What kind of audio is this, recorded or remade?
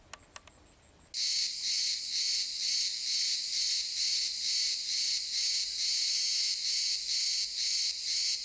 recorded